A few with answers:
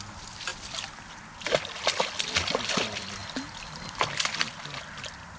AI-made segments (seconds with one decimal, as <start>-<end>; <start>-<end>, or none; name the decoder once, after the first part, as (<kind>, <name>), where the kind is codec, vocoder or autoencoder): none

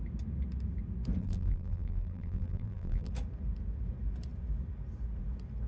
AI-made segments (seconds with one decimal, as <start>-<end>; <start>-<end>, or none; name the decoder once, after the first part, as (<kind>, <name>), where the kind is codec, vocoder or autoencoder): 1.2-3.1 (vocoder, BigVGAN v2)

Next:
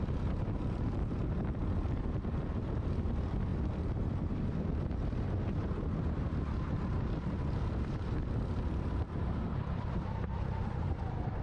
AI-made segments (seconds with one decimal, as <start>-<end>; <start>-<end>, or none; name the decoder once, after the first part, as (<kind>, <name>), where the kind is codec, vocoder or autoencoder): 0.0-1.6 (vocoder, BigVGAN v2); 2.4-3.5; 4.2-11.4

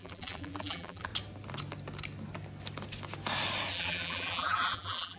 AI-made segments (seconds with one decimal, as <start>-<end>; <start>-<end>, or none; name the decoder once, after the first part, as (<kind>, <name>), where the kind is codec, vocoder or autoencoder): 0.0-1.1 (vocoder, BigVGAN v2); 3.7-5.2

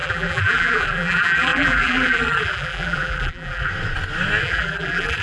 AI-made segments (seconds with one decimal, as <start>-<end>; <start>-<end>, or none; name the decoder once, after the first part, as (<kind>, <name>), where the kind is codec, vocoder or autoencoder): 0.0-3.7 (vocoder, BigVGAN v2); 4.4-5.2

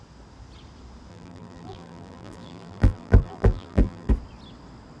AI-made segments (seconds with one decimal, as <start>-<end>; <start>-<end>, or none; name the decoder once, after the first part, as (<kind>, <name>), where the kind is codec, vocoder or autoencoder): 1.1-4.1 (vocoder, BigVGAN v2)

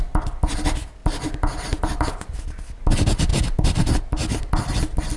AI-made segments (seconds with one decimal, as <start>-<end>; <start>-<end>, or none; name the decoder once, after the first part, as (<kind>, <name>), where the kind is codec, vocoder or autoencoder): 1.0-2.0 (vocoder, BigVGAN v2); 3.3-4.0

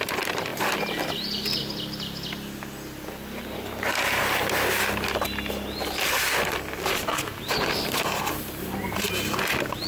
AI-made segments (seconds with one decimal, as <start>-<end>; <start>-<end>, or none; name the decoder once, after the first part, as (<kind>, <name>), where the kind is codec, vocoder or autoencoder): none